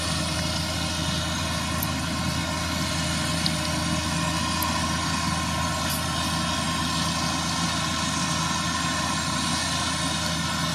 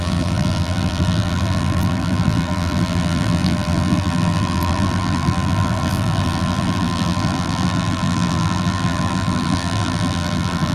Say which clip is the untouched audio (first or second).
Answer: first